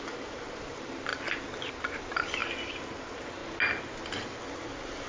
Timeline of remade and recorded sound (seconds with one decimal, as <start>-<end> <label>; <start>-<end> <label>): 0.0-1.1 remade; 1.1-1.7 recorded; 1.7-2.4 remade; 2.4-3.0 recorded; 3.0-3.4 remade; 3.4-4.5 recorded; 4.5-5.1 remade